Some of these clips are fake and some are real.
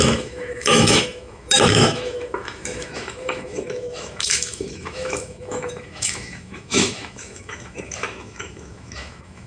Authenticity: fake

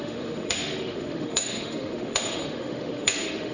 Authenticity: fake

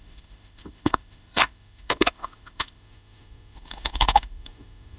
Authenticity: fake